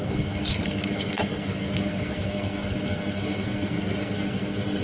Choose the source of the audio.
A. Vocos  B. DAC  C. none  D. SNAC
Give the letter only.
D